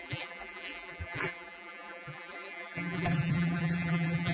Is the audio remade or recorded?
remade